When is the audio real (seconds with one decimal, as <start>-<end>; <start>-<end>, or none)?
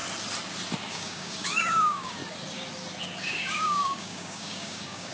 0.0-0.9; 2.2-3.2